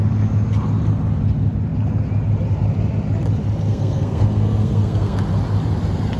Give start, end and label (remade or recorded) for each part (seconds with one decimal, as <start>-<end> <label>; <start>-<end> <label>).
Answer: 0.0-3.7 recorded; 3.7-5.2 remade; 5.2-6.2 recorded